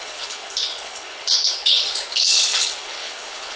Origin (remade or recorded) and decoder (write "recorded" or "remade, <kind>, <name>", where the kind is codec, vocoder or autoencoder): remade, codec, HILCodec